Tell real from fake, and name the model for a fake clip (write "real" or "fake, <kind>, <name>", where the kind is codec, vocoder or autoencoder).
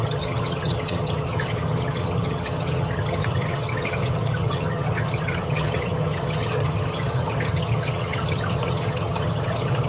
fake, vocoder, HiFi-GAN